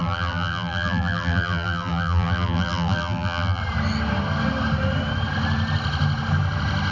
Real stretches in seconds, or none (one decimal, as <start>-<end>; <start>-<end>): 3.6-6.9